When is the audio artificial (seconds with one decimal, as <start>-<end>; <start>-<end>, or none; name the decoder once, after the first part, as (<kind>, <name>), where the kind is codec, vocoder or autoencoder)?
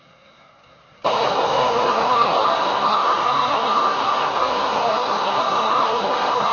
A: 0.0-6.5 (codec, SNAC)